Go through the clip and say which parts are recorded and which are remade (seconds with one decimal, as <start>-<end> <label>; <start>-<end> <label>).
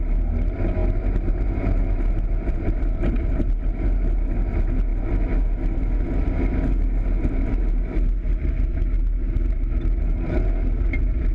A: 0.0-11.3 recorded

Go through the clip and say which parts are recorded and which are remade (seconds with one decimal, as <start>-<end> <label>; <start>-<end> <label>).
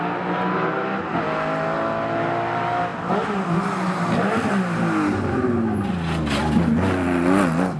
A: 0.0-7.8 recorded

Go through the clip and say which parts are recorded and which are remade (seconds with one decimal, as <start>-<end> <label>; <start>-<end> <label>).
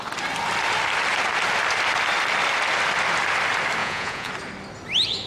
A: 0.0-3.8 recorded; 3.8-4.3 remade; 4.3-5.3 recorded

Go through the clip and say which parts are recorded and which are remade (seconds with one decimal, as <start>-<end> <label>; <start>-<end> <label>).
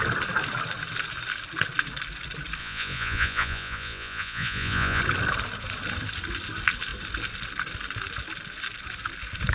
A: 0.0-2.6 recorded; 2.6-5.0 remade; 5.0-9.5 recorded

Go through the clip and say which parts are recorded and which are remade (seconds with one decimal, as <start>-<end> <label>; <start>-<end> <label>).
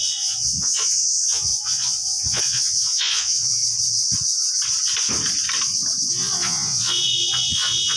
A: 0.0-3.6 remade; 3.6-6.1 recorded; 6.1-8.0 remade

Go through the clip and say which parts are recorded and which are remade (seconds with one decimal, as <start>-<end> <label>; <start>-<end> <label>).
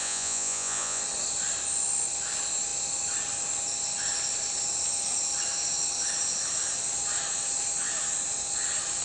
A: 0.0-1.0 remade; 1.0-9.0 recorded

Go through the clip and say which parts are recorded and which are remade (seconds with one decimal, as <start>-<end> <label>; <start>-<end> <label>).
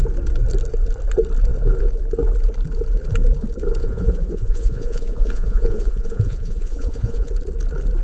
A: 0.0-3.8 recorded; 3.8-7.3 remade; 7.3-8.0 recorded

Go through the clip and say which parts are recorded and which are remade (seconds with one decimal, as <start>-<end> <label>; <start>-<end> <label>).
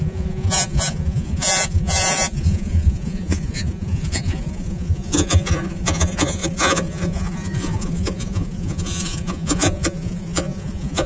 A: 0.0-11.1 remade